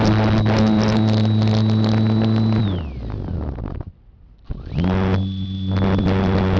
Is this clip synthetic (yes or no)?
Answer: no